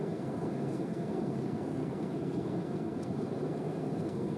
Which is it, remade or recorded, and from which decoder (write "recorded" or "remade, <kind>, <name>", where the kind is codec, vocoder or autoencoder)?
remade, codec, SNAC